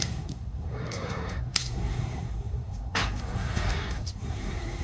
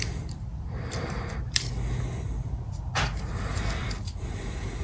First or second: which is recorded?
second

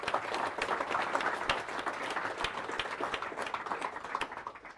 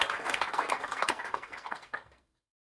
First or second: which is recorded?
first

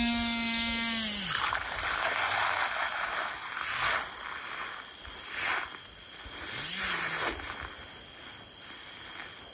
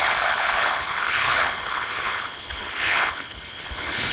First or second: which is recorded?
first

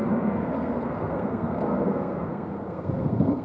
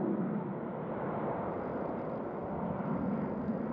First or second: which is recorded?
second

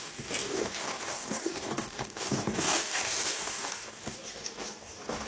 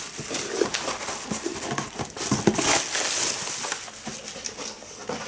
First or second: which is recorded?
second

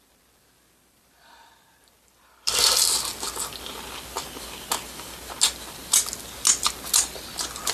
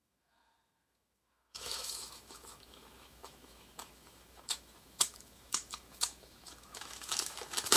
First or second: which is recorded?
first